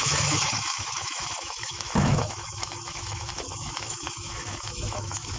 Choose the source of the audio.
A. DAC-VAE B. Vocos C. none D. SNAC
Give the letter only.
A